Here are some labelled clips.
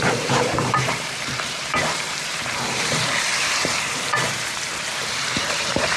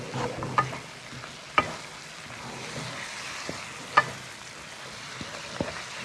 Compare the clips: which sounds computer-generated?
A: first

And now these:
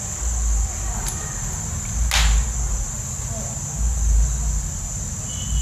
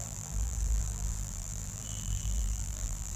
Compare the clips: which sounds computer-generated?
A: second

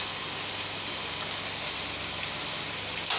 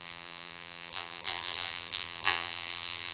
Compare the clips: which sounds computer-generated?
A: second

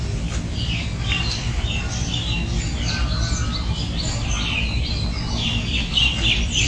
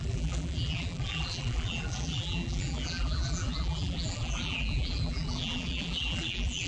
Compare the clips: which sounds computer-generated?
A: second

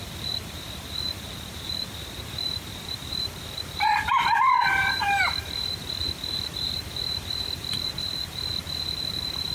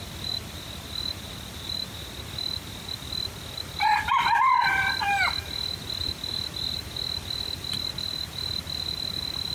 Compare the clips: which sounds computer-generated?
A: first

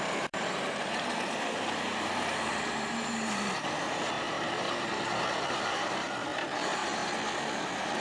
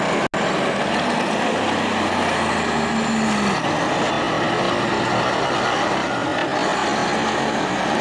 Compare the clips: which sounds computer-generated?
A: first